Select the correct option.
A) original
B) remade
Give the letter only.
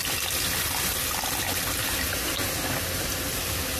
A